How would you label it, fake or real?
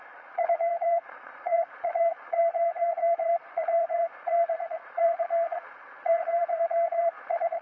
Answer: fake